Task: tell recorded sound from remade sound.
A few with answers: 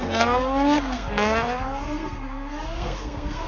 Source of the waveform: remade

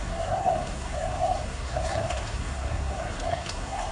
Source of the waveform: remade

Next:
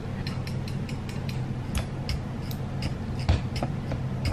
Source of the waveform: recorded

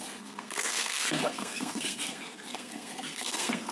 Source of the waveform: remade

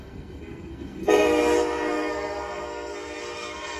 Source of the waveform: remade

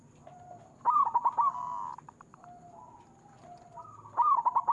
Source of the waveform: recorded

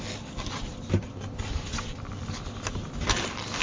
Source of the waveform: recorded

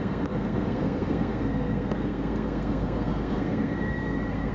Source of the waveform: remade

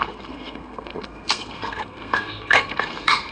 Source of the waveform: remade